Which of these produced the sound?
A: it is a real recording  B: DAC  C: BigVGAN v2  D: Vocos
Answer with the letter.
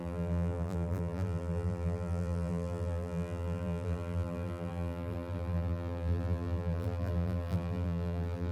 C